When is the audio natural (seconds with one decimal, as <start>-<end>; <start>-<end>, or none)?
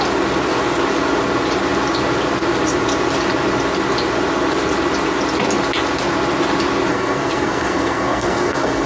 0.0-6.9